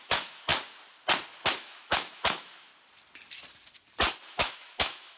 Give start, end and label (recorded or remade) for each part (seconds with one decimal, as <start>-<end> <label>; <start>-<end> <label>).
0.0-0.5 remade; 0.5-1.5 recorded; 1.5-2.7 remade; 2.7-4.3 recorded; 4.3-5.2 remade